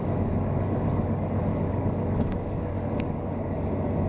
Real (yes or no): no